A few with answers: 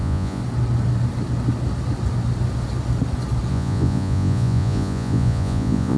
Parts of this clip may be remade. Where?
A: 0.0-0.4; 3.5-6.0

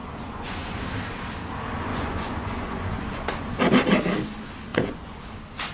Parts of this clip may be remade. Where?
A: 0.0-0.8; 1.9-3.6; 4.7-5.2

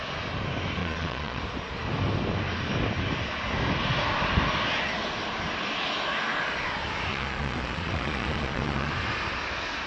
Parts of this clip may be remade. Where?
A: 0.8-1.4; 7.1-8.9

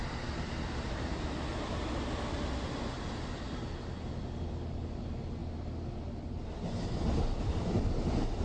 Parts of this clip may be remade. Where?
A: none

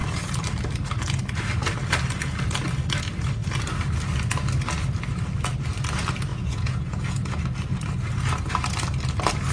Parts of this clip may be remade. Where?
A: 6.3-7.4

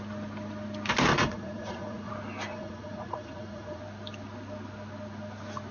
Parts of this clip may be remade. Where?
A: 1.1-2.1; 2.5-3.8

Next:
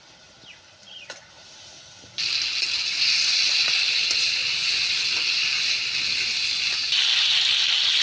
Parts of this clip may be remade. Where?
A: none